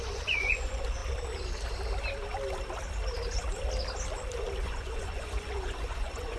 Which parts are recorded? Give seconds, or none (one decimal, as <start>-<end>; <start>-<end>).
1.0-4.6